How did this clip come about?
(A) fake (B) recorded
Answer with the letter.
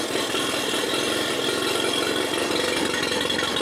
B